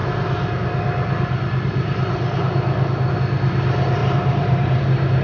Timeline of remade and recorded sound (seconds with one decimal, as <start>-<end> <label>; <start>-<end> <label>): 0.0-4.0 recorded; 4.0-4.8 remade; 4.8-5.2 recorded